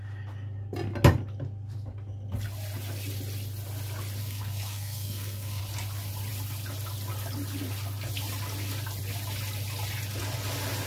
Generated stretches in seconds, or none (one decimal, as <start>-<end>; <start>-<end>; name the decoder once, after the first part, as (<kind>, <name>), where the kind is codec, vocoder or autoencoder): 4.2-5.6 (codec, SNAC)